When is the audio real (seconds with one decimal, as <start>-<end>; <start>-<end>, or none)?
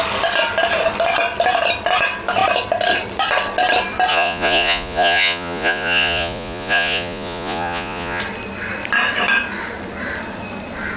0.0-4.1; 8.2-11.0